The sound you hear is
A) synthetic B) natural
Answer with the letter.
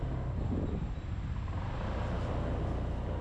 B